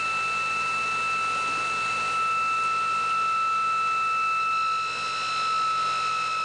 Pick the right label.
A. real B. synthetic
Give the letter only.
A